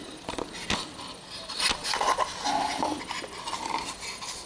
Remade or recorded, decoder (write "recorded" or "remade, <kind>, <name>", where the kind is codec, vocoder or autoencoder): recorded